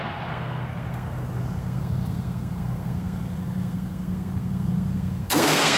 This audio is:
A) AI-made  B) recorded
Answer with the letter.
A